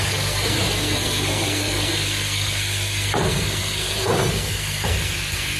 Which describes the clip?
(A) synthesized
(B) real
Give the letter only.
A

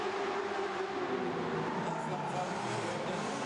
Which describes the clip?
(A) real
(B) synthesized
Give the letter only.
A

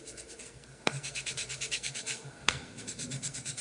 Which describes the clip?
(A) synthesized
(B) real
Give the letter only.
A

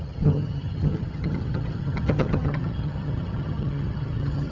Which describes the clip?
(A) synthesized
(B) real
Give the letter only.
A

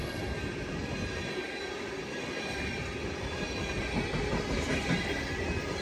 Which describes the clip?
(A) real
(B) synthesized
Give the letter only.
A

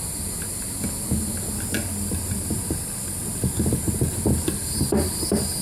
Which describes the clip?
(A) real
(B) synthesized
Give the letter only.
A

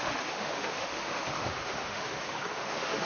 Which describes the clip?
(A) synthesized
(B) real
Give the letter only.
A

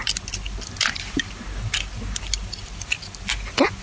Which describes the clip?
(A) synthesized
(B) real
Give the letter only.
B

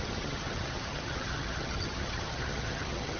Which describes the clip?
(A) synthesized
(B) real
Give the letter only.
A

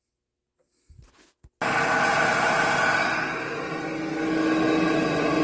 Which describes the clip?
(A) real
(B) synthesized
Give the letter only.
A